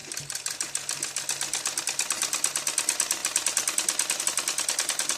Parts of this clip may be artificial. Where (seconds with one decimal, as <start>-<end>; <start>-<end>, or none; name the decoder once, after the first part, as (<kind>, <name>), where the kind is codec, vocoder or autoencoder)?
none